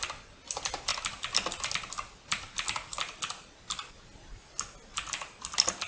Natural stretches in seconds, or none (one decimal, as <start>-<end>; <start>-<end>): 0.0-5.9